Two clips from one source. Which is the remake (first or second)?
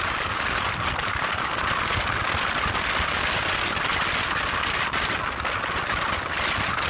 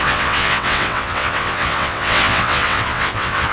second